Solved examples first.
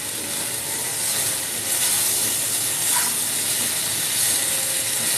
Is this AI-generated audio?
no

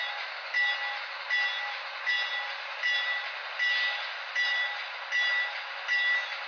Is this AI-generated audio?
no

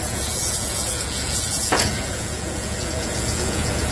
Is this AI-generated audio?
yes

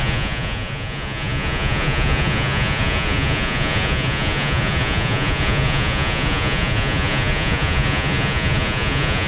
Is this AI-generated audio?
yes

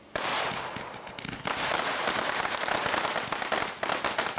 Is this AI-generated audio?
no